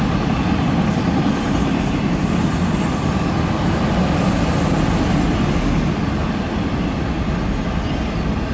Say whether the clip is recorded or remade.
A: recorded